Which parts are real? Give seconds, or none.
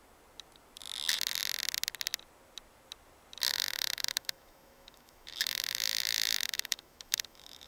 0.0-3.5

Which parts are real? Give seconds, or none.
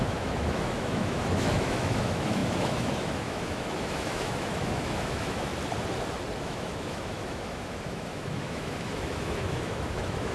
5.5-6.4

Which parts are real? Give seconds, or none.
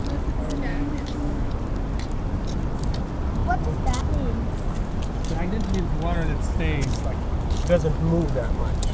0.0-0.7; 1.5-8.9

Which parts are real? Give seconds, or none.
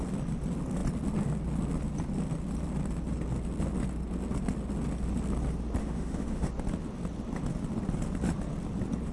0.0-5.8; 6.5-9.1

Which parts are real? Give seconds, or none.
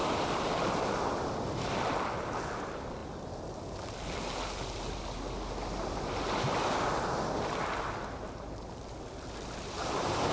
0.0-10.3